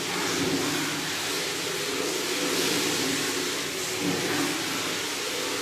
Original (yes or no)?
yes